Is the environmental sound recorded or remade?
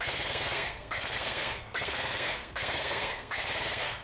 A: remade